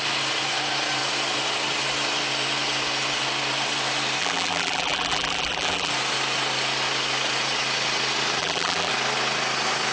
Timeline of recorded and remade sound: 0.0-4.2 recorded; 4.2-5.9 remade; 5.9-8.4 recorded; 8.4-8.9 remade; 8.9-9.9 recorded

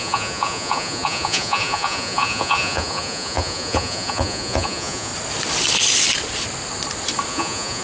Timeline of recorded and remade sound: 0.0-5.1 remade; 5.1-7.3 recorded; 7.3-7.8 remade